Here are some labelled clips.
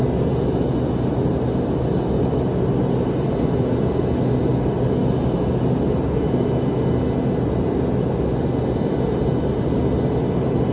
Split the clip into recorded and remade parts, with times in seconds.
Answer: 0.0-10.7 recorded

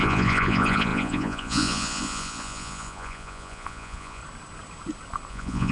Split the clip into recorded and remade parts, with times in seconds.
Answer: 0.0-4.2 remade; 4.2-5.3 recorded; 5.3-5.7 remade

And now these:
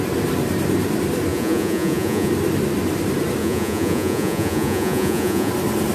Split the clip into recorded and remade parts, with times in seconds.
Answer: 0.0-1.3 recorded; 1.3-2.3 remade; 2.3-3.4 recorded; 3.4-5.5 remade; 5.5-5.9 recorded

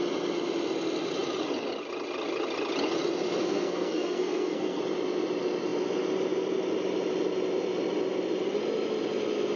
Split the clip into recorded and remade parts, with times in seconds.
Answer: 0.0-3.4 recorded; 3.4-4.8 remade; 4.8-9.6 recorded

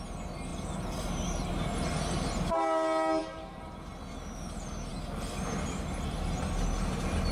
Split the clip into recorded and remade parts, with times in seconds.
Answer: 0.0-0.5 recorded; 0.5-1.5 remade; 1.5-3.2 recorded; 3.2-3.9 remade; 3.9-7.3 recorded

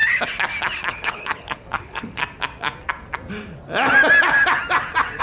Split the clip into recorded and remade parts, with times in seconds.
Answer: 0.0-0.9 recorded; 0.9-2.2 remade; 2.2-5.2 recorded